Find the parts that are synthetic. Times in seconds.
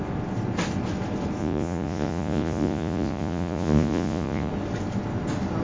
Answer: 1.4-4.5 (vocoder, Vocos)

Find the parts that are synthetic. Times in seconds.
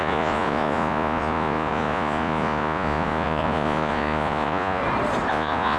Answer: 0.0-4.8 (vocoder, Vocos); 5.3-5.8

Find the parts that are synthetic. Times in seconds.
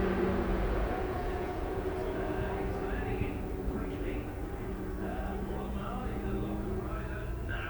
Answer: 0.5-1.9 (vocoder, Vocos); 5.8-7.1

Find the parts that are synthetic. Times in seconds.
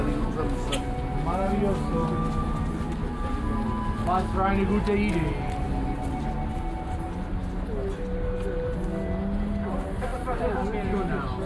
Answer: none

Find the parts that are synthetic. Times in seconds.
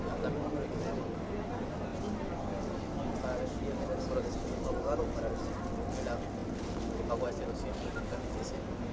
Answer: none